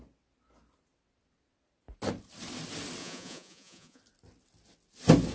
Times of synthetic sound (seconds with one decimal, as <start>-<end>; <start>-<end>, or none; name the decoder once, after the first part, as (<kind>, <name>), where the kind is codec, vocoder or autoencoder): 3.0-4.0 (vocoder, Vocos)